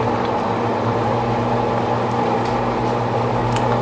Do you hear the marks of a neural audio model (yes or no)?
no